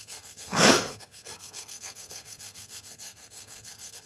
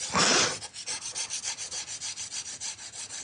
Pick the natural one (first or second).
second